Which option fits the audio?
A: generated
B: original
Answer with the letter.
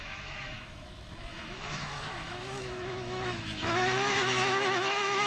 A